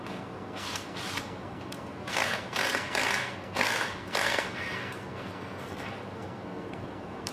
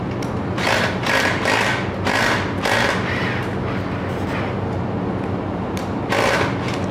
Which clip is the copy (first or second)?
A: first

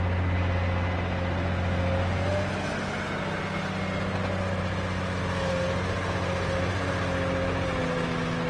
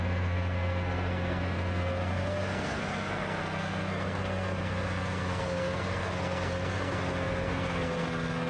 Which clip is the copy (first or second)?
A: second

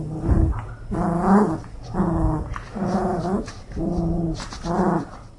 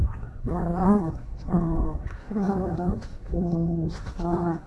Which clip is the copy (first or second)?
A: second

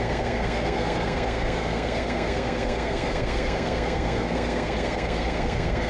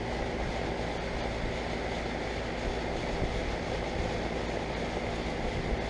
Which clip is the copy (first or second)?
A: first